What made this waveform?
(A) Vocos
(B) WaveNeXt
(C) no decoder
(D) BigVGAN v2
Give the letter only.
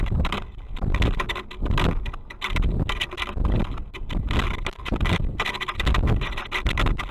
C